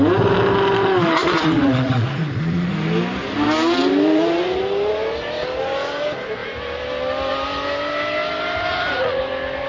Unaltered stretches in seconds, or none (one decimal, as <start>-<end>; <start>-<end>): 0.0-1.2; 2.7-8.7; 9.2-9.7

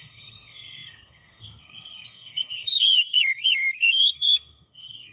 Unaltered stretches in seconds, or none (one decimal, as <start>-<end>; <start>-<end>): none

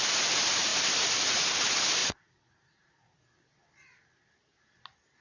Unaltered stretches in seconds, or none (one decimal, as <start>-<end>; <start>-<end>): 0.0-2.0; 3.2-5.2

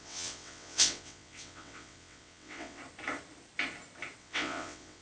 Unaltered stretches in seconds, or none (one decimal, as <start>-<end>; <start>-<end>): 2.8-4.2

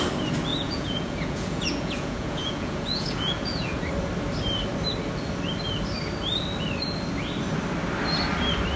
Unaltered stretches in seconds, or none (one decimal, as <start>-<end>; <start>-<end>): 0.0-0.5; 3.8-8.8